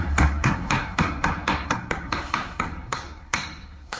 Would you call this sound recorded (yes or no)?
no